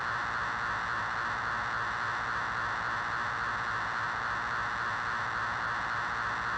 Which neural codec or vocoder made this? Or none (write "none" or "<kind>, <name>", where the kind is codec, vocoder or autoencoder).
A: none